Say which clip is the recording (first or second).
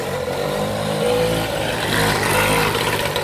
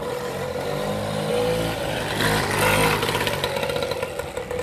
second